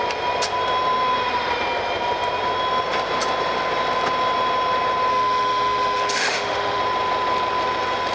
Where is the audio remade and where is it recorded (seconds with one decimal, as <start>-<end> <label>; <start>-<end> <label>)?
0.0-5.1 recorded; 5.1-6.8 remade; 6.8-8.1 recorded